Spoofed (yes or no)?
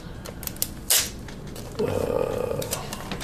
no